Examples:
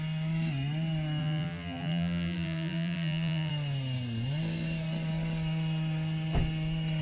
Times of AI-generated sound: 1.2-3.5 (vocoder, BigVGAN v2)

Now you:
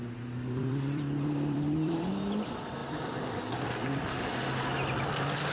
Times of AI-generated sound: 0.6-2.1 (vocoder, BigVGAN v2); 2.8-3.4

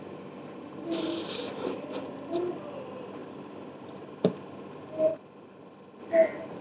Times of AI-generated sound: 1.5-2.5 (vocoder, BigVGAN v2); 3.2-4.1; 5.1-6.0

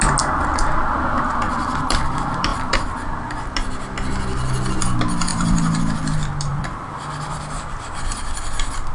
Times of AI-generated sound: 5.3-5.8 (vocoder, BigVGAN v2); 6.5-8.2

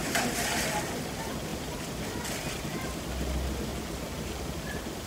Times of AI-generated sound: 1.5-2.0 (vocoder, BigVGAN v2)

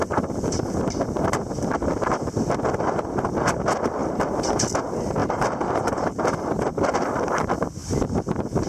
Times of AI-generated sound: 5.2-6.2 (vocoder, BigVGAN v2)